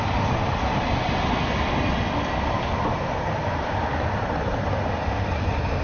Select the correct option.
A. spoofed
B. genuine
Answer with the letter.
B